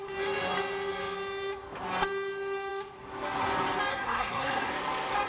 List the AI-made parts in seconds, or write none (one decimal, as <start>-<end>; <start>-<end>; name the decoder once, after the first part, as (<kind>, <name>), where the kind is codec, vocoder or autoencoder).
3.9-4.7 (codec, SNAC)